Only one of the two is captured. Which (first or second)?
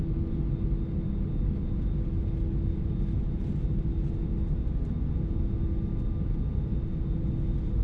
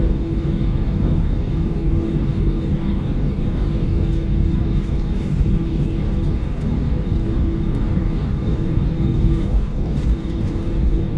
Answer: first